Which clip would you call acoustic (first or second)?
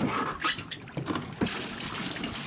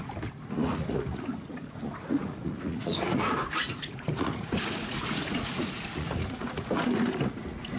first